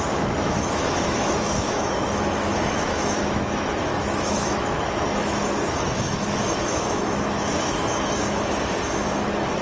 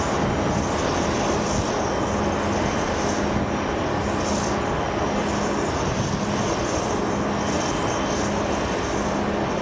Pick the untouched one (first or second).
second